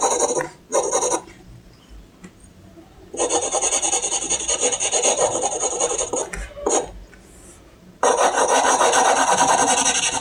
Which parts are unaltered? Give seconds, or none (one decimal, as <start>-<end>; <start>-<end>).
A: 0.7-1.2; 6.2-7.1